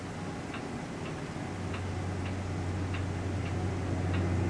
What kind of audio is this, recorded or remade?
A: recorded